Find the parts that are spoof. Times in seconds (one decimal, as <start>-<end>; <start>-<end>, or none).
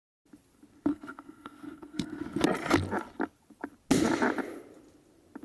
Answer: 0.9-2.2